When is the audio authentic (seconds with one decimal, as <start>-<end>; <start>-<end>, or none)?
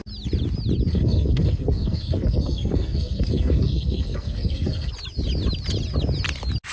0.0-0.9; 4.9-6.7